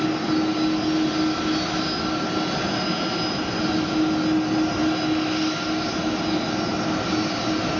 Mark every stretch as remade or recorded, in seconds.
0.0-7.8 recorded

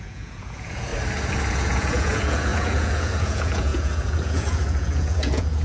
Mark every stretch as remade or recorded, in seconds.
0.0-0.9 remade; 0.9-1.5 recorded; 1.5-5.6 remade

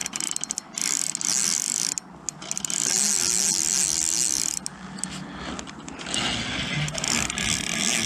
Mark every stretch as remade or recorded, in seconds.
0.0-8.1 recorded

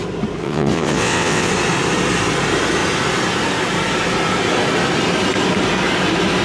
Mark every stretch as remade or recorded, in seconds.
0.0-0.4 recorded; 0.4-1.5 remade; 1.5-6.4 recorded